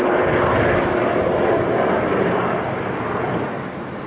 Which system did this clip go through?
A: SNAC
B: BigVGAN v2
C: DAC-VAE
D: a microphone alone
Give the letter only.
D